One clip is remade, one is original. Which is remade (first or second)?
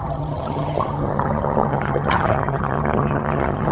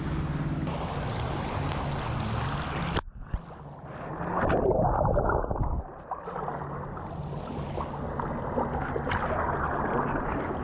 first